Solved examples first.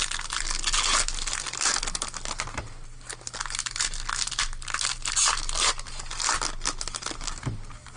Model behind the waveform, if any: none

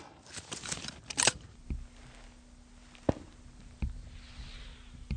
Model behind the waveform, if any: none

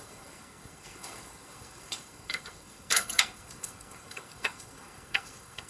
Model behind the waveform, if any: codec, SNAC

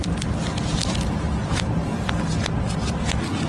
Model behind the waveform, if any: none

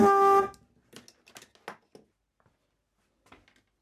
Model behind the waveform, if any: none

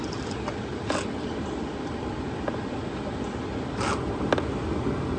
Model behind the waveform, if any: none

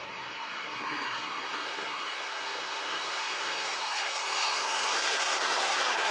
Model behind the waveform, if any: codec, SNAC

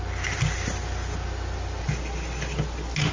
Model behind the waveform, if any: none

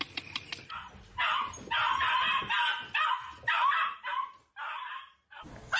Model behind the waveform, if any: none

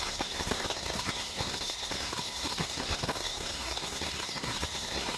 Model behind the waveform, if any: codec, SNAC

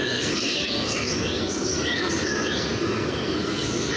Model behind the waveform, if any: codec, SNAC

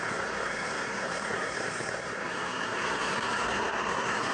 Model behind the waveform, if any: codec, SNAC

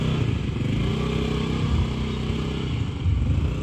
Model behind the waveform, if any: none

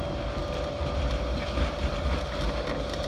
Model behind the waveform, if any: none